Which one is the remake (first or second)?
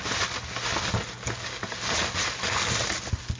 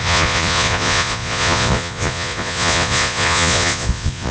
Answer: second